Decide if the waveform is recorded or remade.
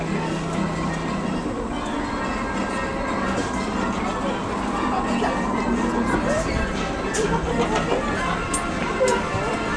recorded